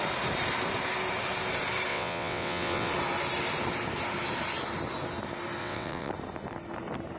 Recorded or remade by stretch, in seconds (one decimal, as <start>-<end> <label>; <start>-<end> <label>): 0.0-1.9 recorded; 1.9-2.9 remade; 2.9-5.6 recorded; 5.6-6.1 remade; 6.1-7.2 recorded